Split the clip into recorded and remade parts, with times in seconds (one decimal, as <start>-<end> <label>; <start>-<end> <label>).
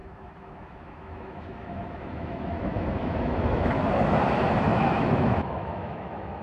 0.0-3.8 remade; 3.8-4.7 recorded; 4.7-6.4 remade